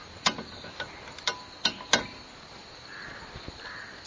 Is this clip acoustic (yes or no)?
yes